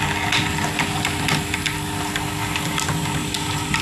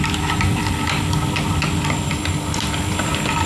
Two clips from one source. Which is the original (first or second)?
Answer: first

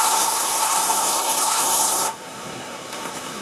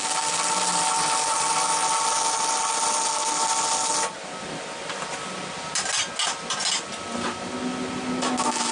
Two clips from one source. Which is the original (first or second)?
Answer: second